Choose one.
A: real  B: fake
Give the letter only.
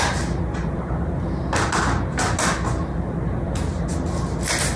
A